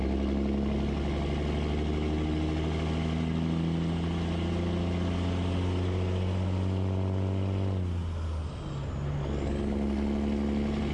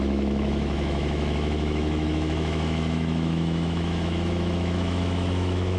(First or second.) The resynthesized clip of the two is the second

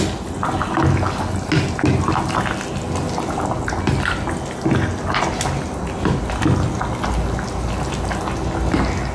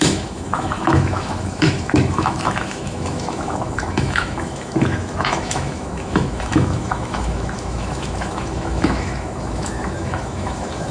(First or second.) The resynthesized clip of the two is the second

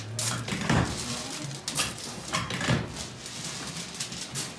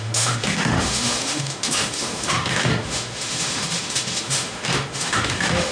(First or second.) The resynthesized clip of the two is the second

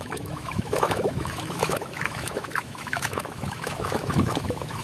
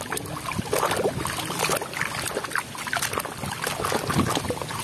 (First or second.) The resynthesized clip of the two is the first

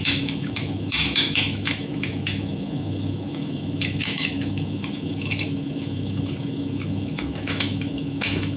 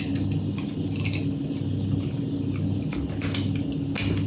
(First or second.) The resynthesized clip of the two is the first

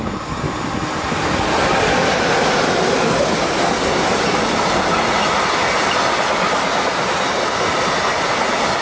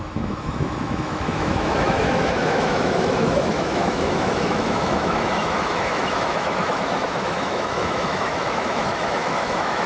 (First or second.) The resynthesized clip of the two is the second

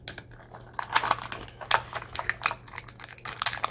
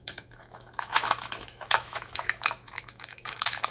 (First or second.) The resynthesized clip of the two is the second